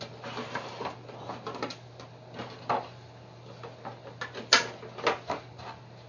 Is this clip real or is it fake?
real